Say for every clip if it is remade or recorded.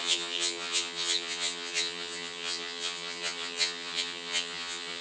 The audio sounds remade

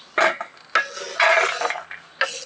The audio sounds recorded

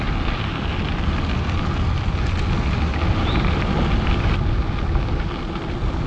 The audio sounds recorded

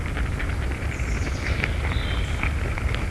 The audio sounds recorded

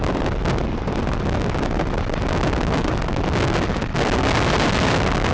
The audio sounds recorded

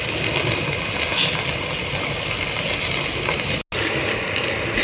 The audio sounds recorded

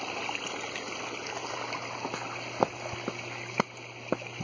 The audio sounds recorded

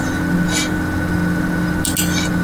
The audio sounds recorded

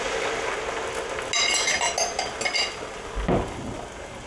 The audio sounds recorded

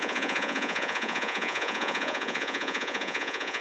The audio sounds remade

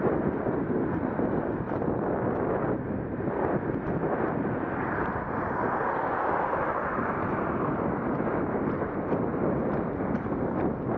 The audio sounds recorded